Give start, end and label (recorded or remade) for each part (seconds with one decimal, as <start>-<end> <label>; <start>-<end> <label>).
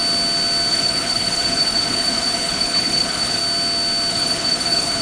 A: 0.0-0.7 recorded; 0.7-3.4 remade; 3.4-4.1 recorded; 4.1-5.0 remade